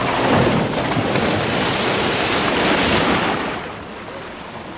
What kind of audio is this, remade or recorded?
recorded